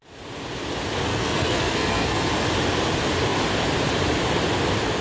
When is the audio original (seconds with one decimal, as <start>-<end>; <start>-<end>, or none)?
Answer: 0.0-1.1; 2.3-5.0